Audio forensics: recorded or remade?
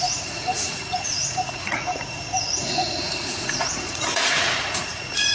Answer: remade